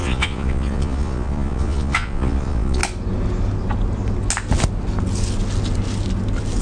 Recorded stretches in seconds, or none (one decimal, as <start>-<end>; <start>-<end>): 2.8-6.6